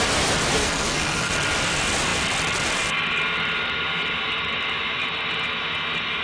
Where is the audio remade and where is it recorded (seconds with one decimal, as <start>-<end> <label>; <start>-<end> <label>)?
0.0-0.6 recorded; 0.6-1.3 remade; 1.3-6.2 recorded